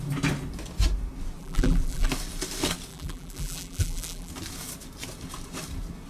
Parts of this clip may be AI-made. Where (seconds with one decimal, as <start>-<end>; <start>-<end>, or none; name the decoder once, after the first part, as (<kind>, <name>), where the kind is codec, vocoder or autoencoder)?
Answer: 1.4-2.1 (vocoder, BigVGAN v2); 2.9-4.3